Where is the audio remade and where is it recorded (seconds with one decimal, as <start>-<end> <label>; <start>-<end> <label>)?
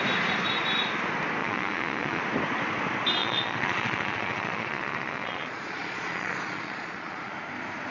0.0-1.4 recorded; 1.4-2.2 remade; 2.2-3.2 recorded; 3.2-7.3 remade; 7.3-7.9 recorded